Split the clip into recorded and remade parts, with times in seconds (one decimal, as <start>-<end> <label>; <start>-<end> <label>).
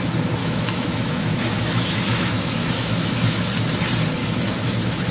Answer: 0.0-0.4 recorded; 0.4-3.5 remade; 3.5-4.2 recorded; 4.2-5.1 remade